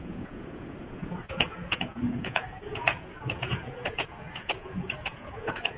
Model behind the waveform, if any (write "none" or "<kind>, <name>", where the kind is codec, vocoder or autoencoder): vocoder, Vocos